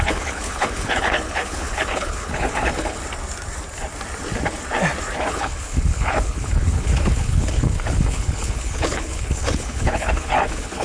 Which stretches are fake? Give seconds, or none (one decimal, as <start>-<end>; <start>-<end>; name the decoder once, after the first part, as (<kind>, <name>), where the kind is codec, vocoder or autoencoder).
0.0-3.0 (codec, HILCodec); 5.3-10.8